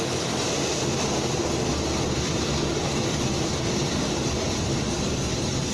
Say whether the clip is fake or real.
real